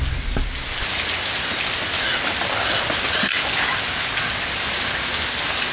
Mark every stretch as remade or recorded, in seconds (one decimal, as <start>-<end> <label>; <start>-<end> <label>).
0.0-5.7 recorded